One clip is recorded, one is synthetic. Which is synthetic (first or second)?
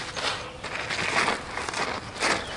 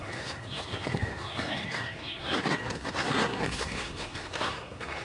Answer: second